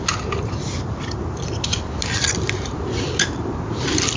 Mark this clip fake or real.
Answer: real